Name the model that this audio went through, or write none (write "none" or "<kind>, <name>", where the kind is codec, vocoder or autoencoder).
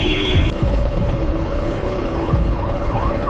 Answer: codec, HILCodec